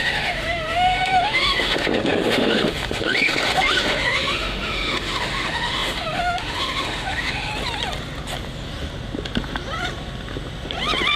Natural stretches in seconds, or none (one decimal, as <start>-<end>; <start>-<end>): 7.5-11.2